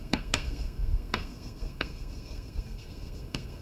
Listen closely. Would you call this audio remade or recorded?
remade